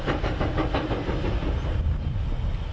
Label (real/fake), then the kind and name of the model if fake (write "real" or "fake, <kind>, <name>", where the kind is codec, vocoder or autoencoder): real